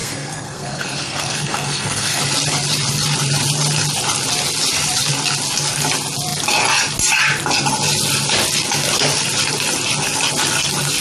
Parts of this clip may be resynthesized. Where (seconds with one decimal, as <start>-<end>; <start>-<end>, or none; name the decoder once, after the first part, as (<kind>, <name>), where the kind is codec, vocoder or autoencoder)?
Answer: 0.0-2.2 (codec, SNAC)